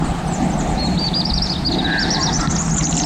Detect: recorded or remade recorded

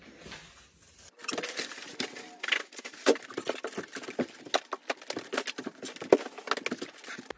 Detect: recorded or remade recorded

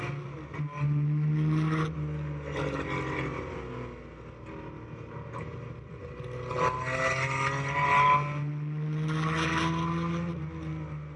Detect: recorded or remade recorded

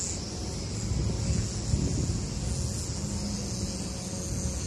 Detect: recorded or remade recorded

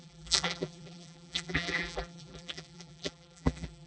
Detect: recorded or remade remade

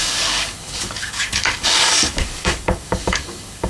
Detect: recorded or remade remade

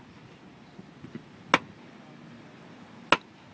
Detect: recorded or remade recorded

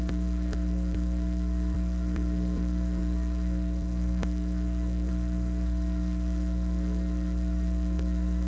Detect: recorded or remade remade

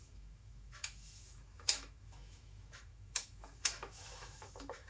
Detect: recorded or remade remade